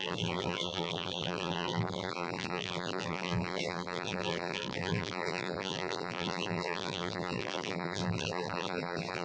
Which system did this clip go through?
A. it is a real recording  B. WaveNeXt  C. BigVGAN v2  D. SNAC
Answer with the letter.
C